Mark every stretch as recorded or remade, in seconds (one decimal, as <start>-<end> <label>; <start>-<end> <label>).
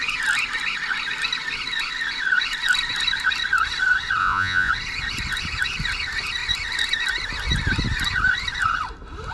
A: 0.0-4.2 recorded; 4.2-4.7 remade; 4.7-9.3 recorded